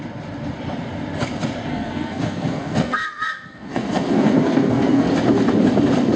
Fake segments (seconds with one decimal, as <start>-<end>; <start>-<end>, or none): 1.7-5.1